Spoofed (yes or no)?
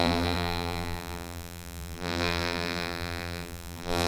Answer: yes